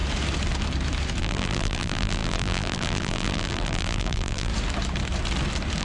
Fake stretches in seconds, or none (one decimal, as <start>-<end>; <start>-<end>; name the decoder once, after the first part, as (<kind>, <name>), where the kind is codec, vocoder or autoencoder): 1.2-4.5 (vocoder, BigVGAN v2)